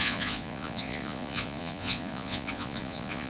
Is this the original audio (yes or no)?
no